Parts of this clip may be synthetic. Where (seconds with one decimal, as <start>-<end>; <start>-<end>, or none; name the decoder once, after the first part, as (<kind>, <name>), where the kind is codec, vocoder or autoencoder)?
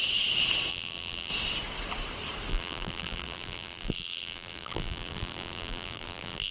0.7-1.3 (vocoder, BigVGAN v2); 2.5-6.5